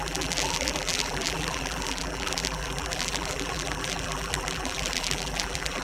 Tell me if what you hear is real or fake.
fake